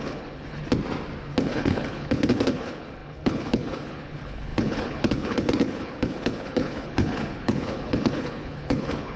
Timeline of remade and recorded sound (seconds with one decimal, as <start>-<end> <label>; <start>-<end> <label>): 0.0-0.6 remade; 0.6-1.4 recorded; 1.4-9.2 remade